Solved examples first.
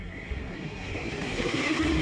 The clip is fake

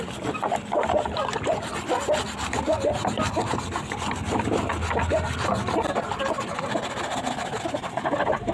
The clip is real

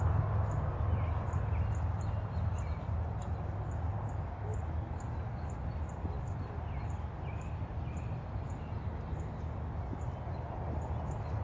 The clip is real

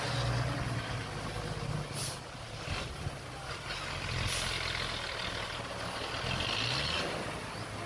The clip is real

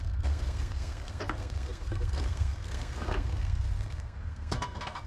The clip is fake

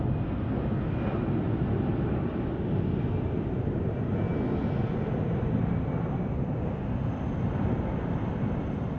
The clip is real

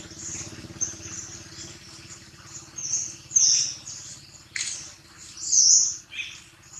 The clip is real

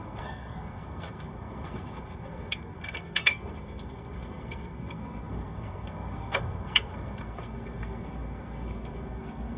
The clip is fake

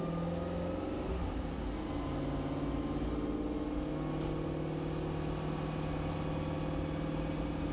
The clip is real